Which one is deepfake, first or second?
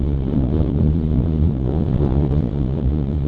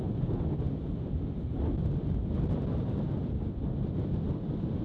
first